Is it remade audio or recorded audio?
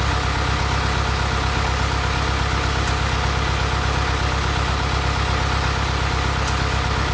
recorded